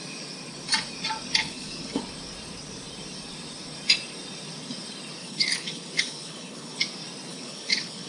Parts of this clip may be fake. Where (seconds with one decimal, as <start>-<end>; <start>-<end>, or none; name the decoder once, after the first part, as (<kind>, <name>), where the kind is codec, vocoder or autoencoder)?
1.4-2.0 (codec, HILCodec); 5.2-6.8; 7.3-8.1